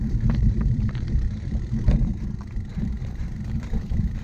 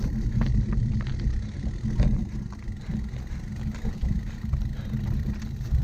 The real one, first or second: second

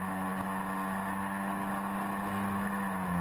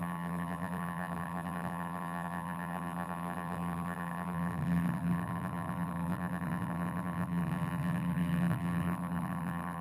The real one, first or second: first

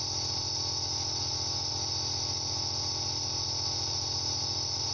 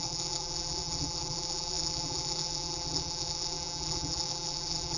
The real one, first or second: first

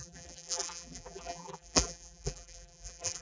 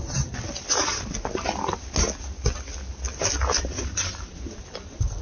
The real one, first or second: second